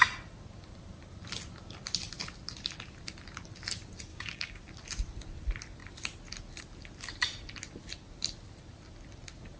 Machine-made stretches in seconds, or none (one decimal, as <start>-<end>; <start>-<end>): 4.1-4.6